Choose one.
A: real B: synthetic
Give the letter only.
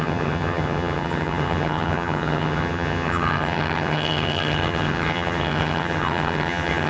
B